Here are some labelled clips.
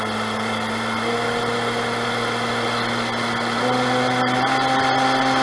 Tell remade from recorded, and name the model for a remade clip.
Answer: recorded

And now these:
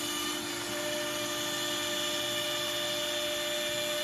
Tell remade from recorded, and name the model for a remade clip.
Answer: recorded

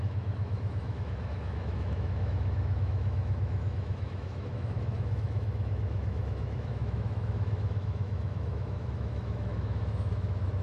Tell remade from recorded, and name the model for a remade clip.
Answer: remade, autoencoder, DAC-VAE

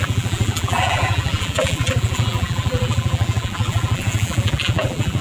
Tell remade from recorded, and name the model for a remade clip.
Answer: remade, vocoder, BigVGAN v2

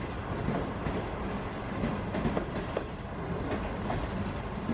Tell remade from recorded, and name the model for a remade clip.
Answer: recorded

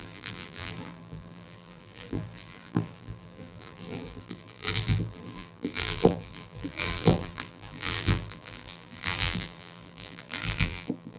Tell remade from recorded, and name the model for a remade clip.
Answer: remade, vocoder, BigVGAN v2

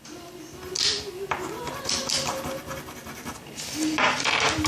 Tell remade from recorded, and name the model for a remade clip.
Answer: recorded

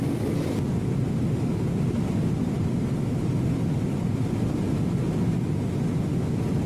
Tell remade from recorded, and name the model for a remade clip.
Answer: recorded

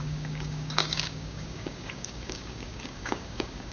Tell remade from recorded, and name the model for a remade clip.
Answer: remade, codec, DAC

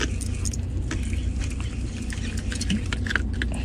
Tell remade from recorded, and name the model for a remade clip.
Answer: recorded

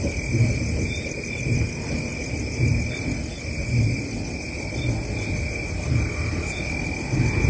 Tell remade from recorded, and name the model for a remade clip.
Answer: recorded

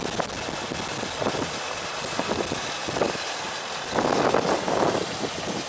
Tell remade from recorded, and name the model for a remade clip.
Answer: recorded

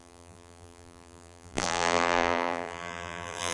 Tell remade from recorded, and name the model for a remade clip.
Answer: remade, vocoder, BigVGAN v2